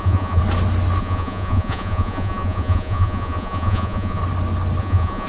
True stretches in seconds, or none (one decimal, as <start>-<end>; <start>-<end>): 0.4-1.0; 4.2-4.8